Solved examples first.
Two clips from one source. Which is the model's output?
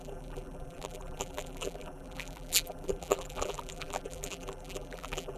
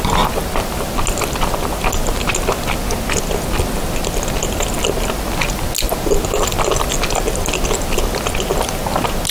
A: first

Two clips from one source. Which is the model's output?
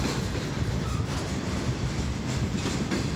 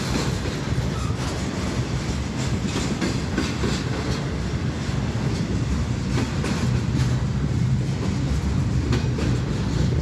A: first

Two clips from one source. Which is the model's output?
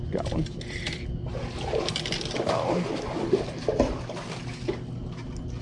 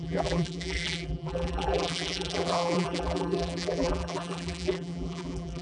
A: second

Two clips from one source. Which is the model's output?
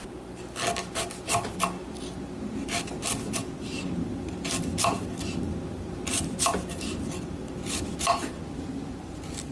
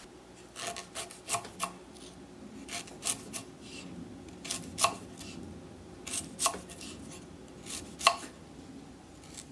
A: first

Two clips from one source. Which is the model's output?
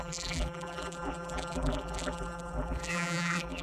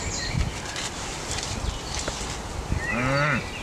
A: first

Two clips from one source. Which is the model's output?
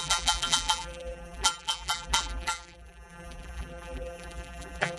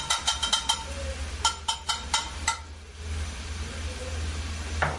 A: first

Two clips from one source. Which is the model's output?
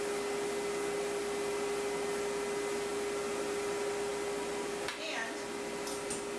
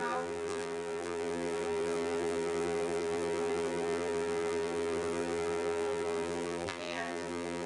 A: second